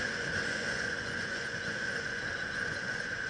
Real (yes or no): no